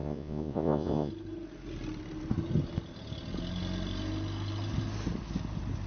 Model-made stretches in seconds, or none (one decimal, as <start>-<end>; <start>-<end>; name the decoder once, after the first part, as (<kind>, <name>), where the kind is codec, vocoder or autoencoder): 0.0-1.1 (vocoder, Vocos)